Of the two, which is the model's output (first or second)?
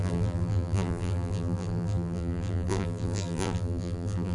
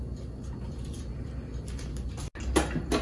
first